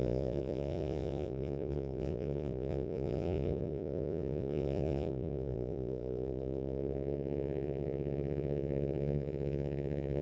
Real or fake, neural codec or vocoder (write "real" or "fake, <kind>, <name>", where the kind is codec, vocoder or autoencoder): fake, vocoder, Vocos